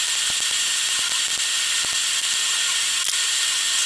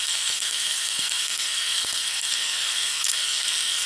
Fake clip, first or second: second